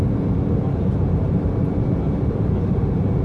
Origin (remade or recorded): remade